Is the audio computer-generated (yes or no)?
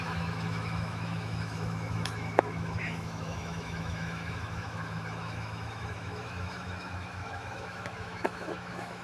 yes